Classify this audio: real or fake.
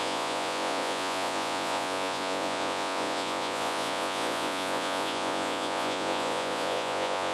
fake